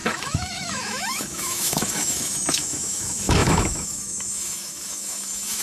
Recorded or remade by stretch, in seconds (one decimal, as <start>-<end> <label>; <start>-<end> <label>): 0.0-5.6 remade